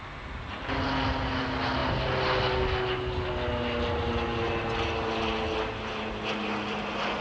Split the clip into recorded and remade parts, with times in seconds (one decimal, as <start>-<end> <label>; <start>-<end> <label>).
0.0-7.2 recorded